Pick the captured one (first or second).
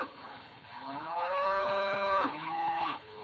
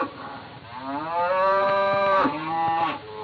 second